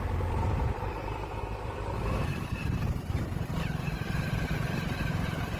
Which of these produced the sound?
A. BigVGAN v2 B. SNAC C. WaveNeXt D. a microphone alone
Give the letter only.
A